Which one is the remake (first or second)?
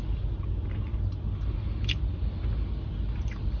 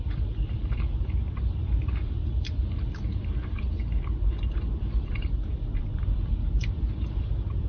second